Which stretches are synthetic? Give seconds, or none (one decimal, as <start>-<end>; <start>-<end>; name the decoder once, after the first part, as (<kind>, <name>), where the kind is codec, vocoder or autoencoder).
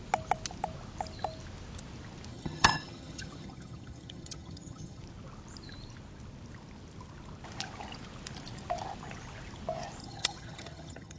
2.3-5.0 (vocoder, HiFi-GAN); 10.0-11.2